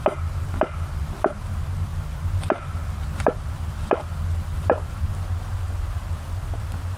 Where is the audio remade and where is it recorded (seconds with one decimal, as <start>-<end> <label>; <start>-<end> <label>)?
0.0-7.0 recorded